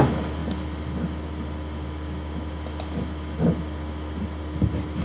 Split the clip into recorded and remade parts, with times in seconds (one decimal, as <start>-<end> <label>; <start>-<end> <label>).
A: 0.0-5.0 recorded